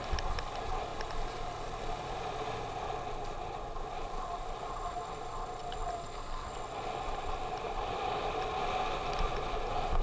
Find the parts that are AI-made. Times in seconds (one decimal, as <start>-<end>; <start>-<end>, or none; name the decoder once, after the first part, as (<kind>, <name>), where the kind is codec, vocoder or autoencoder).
none